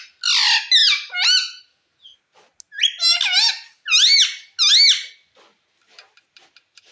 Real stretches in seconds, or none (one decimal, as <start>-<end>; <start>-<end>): 0.0-6.9